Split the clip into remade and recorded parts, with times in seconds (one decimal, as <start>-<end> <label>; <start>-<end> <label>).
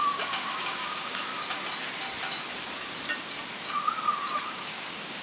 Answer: 0.0-1.3 remade; 1.3-4.4 recorded; 4.4-5.2 remade